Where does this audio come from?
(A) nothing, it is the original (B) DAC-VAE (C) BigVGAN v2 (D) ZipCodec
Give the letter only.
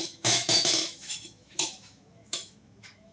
B